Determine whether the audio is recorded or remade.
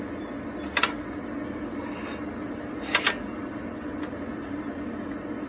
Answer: recorded